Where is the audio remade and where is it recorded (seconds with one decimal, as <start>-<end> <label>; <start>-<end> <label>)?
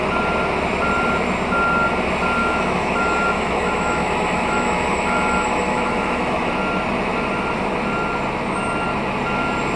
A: 0.0-2.4 recorded; 2.4-6.5 remade; 6.5-9.8 recorded